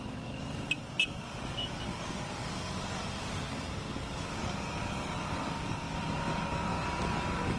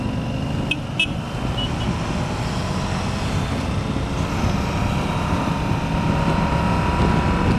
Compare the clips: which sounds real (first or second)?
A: second